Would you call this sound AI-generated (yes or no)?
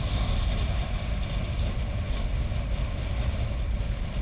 no